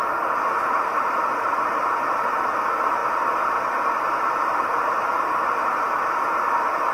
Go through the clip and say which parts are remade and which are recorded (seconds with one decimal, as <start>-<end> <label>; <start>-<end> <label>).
0.0-3.0 remade; 3.0-4.3 recorded; 4.3-6.9 remade